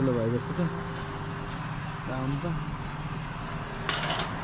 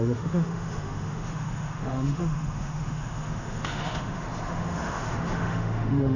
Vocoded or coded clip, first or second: second